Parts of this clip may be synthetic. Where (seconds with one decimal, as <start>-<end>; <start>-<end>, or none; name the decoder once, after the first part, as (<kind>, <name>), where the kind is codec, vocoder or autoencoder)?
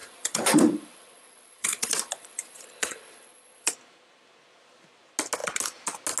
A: 0.0-3.7 (vocoder, Vocos)